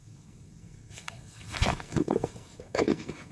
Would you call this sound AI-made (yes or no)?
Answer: yes